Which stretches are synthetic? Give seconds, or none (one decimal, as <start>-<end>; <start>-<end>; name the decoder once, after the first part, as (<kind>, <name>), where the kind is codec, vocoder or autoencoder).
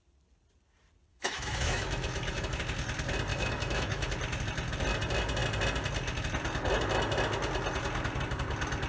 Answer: 1.1-2.6 (autoencoder, DAC-VAE); 3.3-4.1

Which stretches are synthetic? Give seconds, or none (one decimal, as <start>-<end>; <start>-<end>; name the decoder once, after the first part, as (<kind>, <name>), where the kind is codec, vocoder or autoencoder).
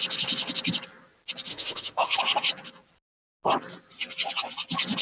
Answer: 1.5-2.2 (autoencoder, DAC-VAE)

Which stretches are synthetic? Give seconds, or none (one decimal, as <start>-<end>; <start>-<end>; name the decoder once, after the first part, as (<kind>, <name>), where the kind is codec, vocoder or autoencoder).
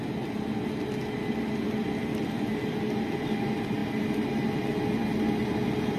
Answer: none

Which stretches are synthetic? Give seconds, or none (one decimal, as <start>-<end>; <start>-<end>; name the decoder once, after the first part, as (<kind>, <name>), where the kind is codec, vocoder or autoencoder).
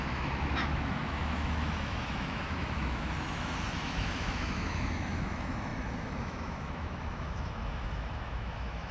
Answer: 0.0-8.9 (autoencoder, DAC-VAE)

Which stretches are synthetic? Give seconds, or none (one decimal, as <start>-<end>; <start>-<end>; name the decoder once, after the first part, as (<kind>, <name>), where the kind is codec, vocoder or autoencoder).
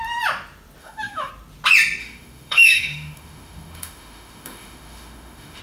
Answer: 0.8-1.3 (autoencoder, DAC-VAE); 2.0-5.6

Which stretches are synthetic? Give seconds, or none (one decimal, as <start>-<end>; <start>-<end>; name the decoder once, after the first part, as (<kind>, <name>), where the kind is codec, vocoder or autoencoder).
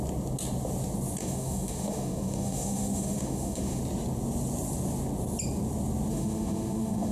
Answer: 1.2-3.8 (autoencoder, DAC-VAE); 6.1-7.1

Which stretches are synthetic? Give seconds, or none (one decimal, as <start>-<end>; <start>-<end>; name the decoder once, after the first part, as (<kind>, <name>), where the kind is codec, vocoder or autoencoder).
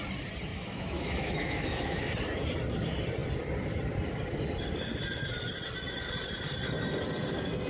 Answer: 0.5-2.1 (autoencoder, DAC-VAE)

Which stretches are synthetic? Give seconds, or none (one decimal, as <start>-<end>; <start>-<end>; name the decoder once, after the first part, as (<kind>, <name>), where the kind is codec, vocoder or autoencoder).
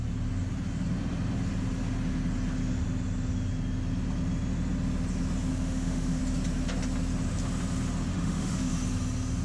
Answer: 5.5-6.2 (autoencoder, DAC-VAE); 8.1-8.7